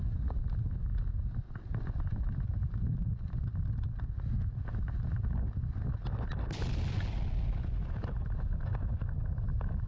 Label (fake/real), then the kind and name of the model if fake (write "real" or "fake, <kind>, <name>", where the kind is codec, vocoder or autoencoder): real